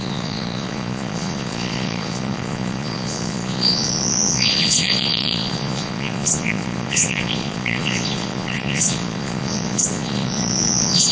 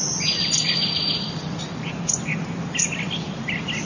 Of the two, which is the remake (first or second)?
first